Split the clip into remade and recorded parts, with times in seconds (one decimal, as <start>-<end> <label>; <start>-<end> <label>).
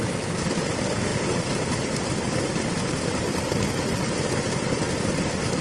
0.0-5.6 recorded